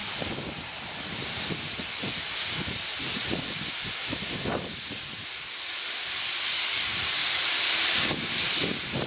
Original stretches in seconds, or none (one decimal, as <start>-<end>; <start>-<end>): 0.7-2.9; 4.5-7.2; 8.7-9.1